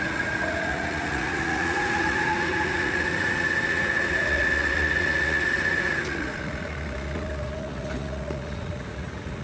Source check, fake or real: fake